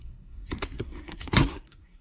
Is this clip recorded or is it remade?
remade